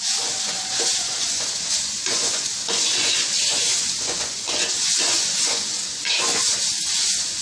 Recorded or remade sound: remade